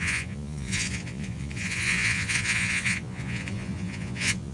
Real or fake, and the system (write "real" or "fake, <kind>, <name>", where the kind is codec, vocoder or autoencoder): fake, vocoder, Vocos